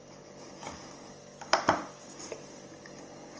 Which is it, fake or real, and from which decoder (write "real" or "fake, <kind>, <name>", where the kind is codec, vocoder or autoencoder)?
real